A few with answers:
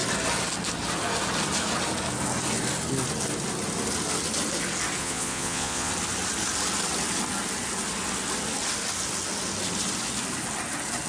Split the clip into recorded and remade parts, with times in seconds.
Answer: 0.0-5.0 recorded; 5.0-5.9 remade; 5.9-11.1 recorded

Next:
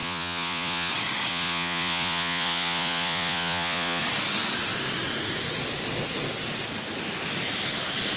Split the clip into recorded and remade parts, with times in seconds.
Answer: 0.0-0.9 remade; 0.9-1.3 recorded; 1.3-4.0 remade; 4.0-8.2 recorded

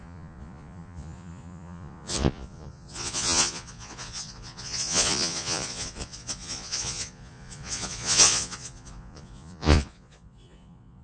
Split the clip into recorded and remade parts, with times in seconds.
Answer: 0.0-11.0 remade

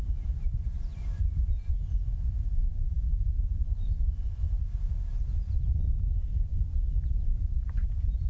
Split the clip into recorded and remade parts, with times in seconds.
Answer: 0.0-0.9 recorded; 0.9-1.7 remade; 1.7-2.7 recorded; 2.7-4.5 remade; 4.5-8.3 recorded

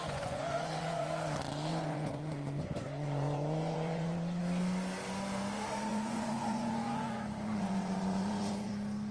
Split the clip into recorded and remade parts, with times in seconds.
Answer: 0.0-1.0 remade; 1.0-1.7 recorded; 1.7-4.4 remade; 4.4-5.9 recorded; 5.9-8.7 remade; 8.7-9.1 recorded

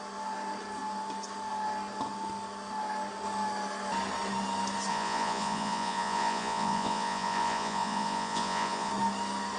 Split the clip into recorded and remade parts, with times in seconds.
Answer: 0.0-4.9 recorded; 4.9-8.9 remade; 8.9-9.6 recorded

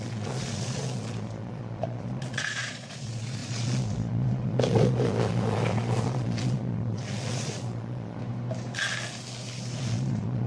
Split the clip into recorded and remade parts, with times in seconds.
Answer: 0.0-8.2 remade; 8.2-9.8 recorded; 9.8-10.5 remade

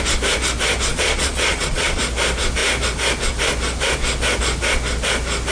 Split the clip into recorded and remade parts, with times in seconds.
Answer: 0.0-0.9 recorded; 0.9-2.0 remade; 2.0-5.5 recorded